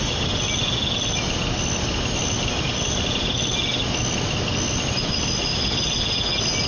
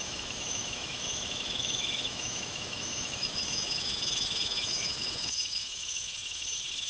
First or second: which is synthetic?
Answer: second